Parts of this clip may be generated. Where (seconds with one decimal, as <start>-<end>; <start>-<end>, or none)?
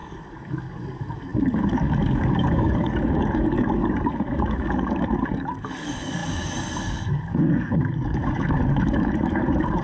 0.0-9.8